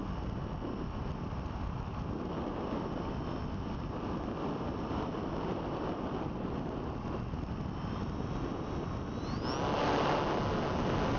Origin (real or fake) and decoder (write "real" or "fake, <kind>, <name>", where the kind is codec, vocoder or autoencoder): real